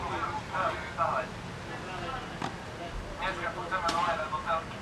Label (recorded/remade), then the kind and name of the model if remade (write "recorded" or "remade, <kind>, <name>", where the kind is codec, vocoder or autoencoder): recorded